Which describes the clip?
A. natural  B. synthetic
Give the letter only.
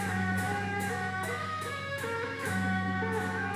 B